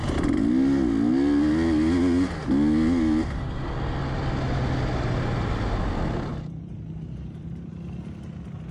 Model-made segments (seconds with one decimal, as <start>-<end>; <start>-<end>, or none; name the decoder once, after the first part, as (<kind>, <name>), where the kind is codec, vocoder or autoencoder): 6.3-7.7 (vocoder, BigVGAN v2)